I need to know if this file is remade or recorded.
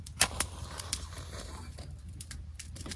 remade